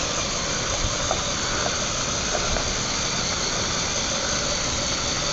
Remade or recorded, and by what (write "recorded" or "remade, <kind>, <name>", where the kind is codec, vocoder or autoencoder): recorded